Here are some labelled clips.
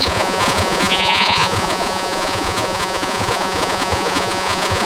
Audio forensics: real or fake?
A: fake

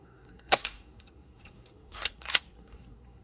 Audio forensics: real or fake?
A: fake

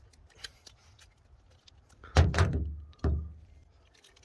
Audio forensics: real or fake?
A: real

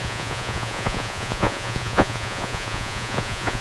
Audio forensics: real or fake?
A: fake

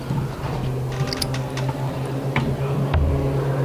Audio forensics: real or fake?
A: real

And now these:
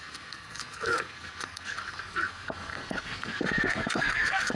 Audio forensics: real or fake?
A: fake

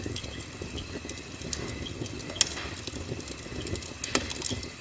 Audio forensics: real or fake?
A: real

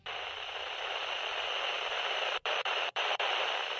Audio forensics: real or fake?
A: fake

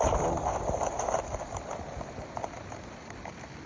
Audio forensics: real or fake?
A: real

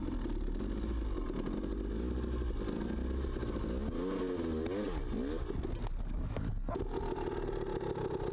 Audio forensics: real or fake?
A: real